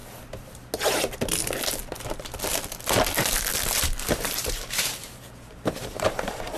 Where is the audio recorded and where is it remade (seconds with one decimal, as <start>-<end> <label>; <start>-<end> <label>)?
0.0-4.0 recorded; 4.0-6.6 remade

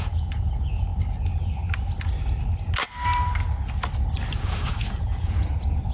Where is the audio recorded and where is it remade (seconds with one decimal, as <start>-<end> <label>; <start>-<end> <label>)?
0.0-0.9 remade; 0.9-4.4 recorded; 4.4-5.9 remade

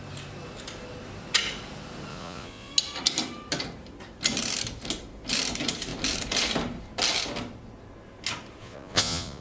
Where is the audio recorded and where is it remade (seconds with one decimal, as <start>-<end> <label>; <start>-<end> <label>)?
0.0-2.1 recorded; 2.1-2.7 remade; 2.7-8.6 recorded; 8.6-9.4 remade

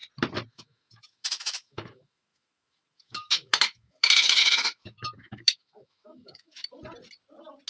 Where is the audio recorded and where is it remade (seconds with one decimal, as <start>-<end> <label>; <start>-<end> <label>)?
0.0-0.5 recorded; 0.5-6.6 remade; 6.6-7.7 recorded